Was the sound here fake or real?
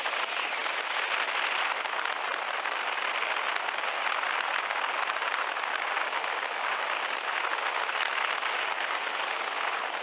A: real